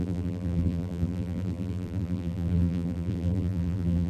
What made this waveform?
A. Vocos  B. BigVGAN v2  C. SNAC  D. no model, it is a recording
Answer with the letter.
B